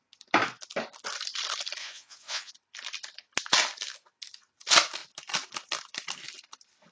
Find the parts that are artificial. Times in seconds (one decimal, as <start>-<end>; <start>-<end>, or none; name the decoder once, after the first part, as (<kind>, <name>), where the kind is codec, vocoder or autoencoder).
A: 1.8-2.5 (vocoder, Vocos)